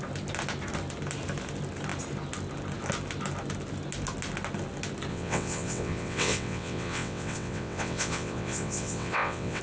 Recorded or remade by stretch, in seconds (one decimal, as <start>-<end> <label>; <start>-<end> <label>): 0.0-5.1 recorded; 5.1-9.6 remade